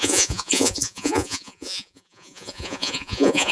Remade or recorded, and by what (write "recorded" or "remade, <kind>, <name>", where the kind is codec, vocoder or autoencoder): remade, vocoder, Vocos